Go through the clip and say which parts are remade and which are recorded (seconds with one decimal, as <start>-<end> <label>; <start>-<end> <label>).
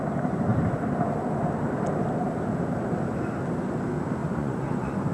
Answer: 0.0-4.2 recorded; 4.2-5.1 remade